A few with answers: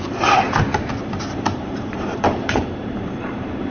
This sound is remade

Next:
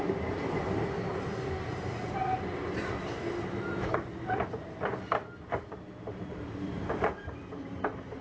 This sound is remade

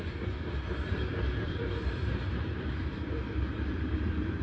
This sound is remade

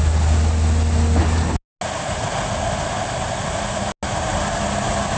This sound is recorded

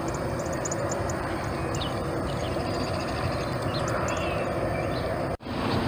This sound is recorded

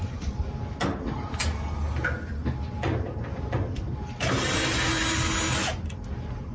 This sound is recorded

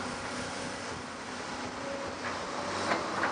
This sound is remade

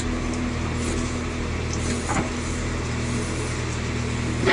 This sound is recorded